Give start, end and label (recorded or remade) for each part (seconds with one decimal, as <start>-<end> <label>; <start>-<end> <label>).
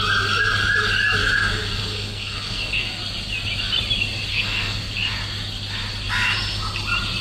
0.0-1.2 recorded; 1.2-3.0 remade; 3.0-4.3 recorded; 4.3-4.9 remade; 4.9-7.2 recorded